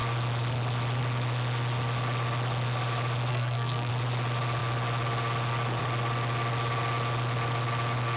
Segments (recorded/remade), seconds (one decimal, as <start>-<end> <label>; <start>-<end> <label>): 0.0-3.3 recorded; 3.3-3.9 remade; 3.9-8.2 recorded